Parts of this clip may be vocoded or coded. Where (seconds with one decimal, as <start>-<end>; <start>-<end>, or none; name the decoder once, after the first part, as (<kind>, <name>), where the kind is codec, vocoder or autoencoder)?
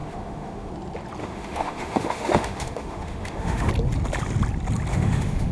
0.0-0.7 (autoencoder, DAC-VAE); 1.2-3.7; 4.9-5.5